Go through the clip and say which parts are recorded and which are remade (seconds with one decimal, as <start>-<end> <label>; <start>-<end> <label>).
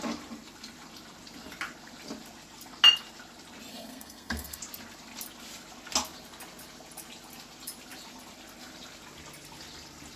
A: 0.0-3.7 recorded; 3.7-4.6 remade; 4.6-10.2 recorded